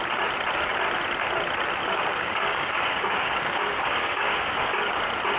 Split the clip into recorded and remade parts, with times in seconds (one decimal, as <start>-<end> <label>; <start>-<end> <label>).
0.0-1.8 recorded; 1.8-5.0 remade; 5.0-5.4 recorded